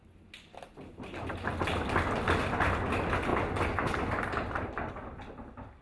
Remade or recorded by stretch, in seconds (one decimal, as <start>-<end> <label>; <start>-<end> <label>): 0.0-5.8 recorded